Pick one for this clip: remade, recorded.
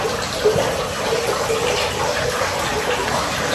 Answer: recorded